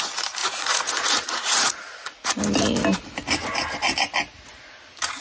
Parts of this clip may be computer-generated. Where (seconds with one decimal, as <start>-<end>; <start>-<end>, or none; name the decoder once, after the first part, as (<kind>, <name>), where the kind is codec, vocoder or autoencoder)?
0.4-2.4 (vocoder, Vocos)